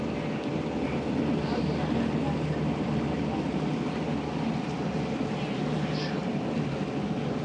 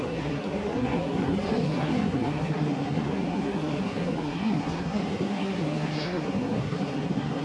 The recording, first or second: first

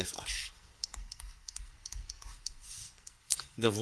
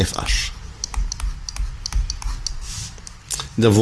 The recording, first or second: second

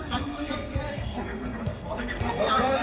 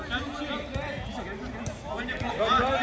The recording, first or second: second